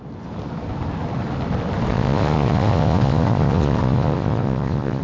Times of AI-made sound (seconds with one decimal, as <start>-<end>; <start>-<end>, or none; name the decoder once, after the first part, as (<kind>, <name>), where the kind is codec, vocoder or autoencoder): 1.9-5.0 (vocoder, Vocos)